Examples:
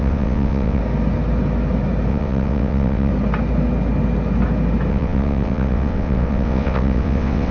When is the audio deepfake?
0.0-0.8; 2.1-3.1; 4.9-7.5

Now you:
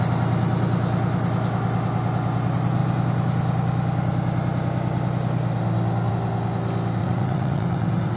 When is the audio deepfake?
7.0-8.2

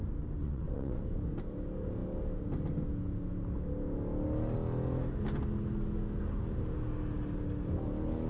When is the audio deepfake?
0.4-1.0

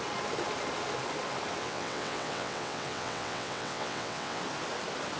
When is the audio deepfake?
1.6-4.4

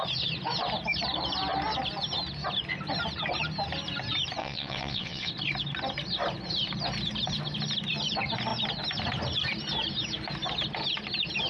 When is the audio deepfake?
4.4-5.3